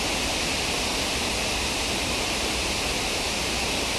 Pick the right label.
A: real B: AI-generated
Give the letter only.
A